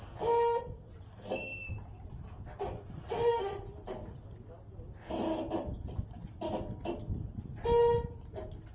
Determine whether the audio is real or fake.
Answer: real